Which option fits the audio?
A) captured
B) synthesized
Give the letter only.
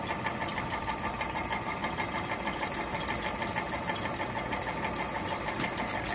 A